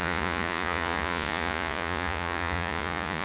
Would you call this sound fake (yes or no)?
yes